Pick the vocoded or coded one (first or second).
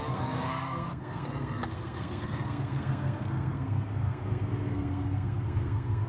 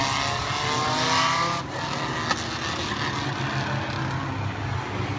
first